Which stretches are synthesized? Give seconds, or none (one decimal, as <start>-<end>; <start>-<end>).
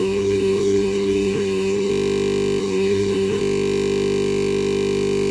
0.0-1.9; 2.6-3.4